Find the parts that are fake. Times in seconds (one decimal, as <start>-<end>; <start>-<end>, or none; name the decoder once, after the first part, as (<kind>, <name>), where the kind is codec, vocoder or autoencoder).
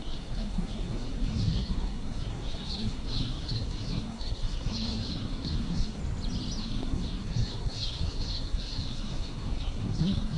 0.0-6.0 (codec, SNAC); 6.6-10.4